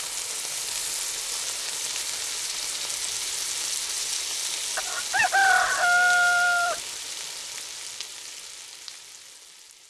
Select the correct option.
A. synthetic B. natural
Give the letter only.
B